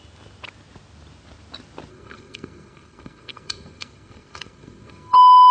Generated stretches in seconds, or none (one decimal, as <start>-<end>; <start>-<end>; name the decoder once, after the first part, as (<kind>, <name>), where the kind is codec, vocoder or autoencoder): 1.9-5.5 (codec, SNAC)